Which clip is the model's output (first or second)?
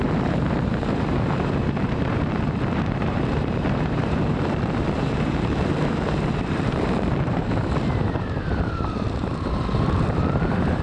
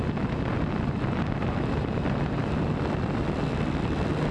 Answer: first